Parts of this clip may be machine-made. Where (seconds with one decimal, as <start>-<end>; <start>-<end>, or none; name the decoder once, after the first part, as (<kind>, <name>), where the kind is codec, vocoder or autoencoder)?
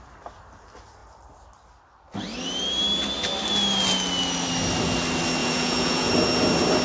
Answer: 5.4-6.1 (vocoder, Vocos)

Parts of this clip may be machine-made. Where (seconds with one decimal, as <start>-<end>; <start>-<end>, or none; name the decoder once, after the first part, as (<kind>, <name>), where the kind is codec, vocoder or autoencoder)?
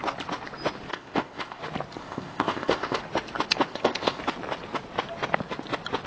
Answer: 0.9-1.6 (codec, ZipCodec); 2.0-3.0; 3.7-4.2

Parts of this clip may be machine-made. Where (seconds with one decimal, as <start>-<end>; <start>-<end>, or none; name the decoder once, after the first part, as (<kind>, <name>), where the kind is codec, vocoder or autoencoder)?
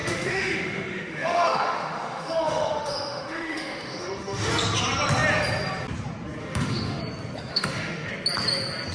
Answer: 0.0-4.5 (autoencoder, DAC-VAE); 6.4-7.0; 7.5-8.1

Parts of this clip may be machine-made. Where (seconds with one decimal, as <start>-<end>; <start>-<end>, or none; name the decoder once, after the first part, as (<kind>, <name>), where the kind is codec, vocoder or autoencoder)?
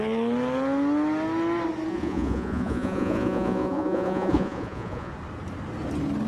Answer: 1.9-5.1 (vocoder, Vocos)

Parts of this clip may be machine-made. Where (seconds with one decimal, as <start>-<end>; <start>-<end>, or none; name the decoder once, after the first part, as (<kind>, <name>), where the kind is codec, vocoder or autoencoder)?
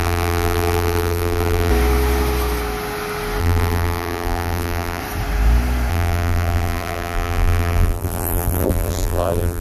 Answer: 0.0-1.7 (vocoder, BigVGAN v2); 3.4-5.0; 5.9-9.6